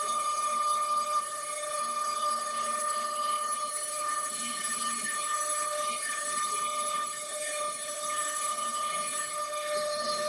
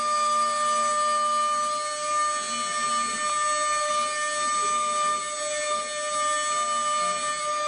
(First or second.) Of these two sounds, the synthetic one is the first